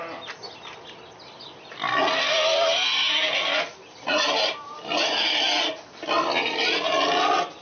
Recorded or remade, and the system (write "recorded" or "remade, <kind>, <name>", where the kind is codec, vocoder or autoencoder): recorded